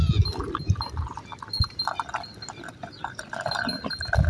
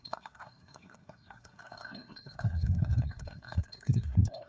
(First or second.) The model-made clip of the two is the second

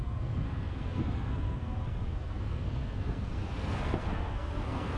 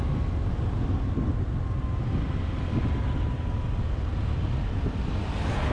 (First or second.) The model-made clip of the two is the first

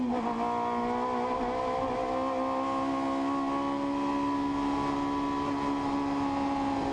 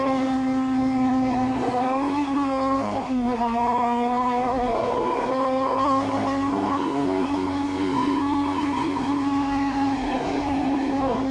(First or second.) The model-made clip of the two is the second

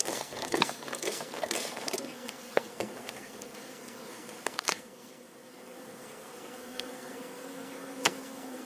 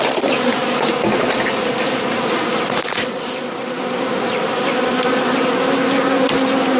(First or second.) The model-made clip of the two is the first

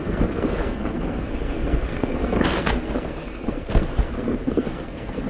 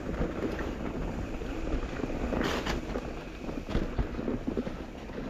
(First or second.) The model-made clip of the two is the first